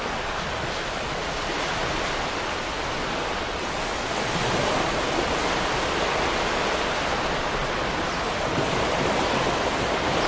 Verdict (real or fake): real